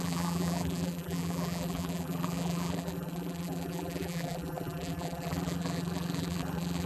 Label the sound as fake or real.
fake